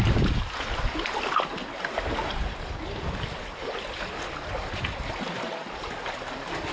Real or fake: real